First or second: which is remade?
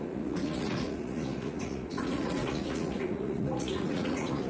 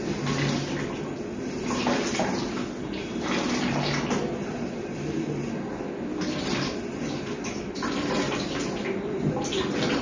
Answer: first